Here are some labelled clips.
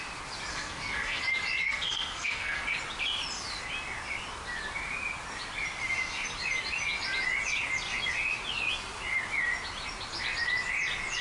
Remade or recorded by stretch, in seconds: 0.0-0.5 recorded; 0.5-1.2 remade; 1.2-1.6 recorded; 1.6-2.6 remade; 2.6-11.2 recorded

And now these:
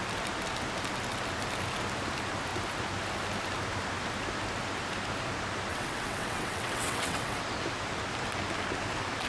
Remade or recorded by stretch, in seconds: 0.0-5.7 recorded; 5.7-7.4 remade; 7.4-9.3 recorded